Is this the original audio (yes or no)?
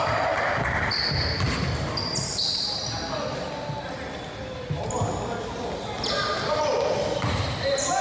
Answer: yes